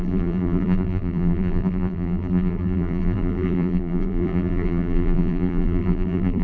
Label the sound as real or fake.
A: fake